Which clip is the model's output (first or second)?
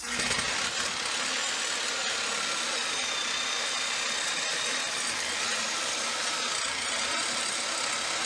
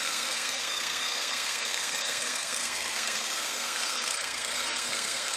second